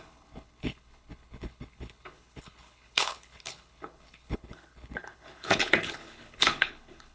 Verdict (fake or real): fake